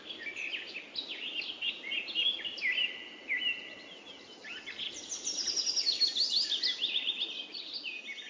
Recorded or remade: recorded